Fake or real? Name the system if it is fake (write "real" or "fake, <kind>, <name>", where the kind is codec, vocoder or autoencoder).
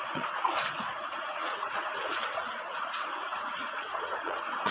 fake, vocoder, Vocos